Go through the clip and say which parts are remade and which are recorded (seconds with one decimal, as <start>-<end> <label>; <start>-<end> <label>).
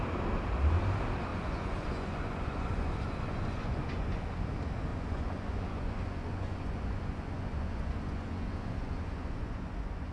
0.0-1.3 recorded; 1.3-4.4 remade; 4.4-4.9 recorded; 4.9-10.1 remade